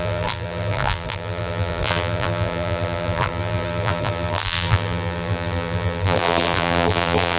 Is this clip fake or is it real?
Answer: fake